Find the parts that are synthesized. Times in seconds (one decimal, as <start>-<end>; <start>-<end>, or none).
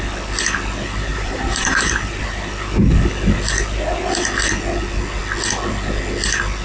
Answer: 1.1-2.3